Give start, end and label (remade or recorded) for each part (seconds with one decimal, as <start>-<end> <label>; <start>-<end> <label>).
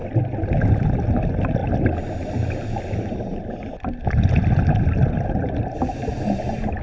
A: 0.0-6.8 recorded